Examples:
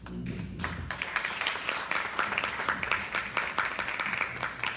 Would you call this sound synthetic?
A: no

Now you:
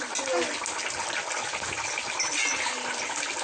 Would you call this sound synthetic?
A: no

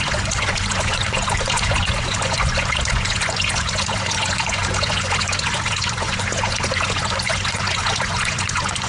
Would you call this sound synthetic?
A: yes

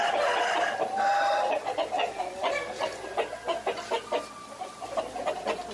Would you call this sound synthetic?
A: no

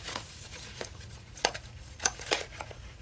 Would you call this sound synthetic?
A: yes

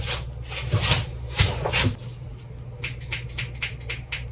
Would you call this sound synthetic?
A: no